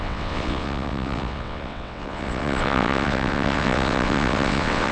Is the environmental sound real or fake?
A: fake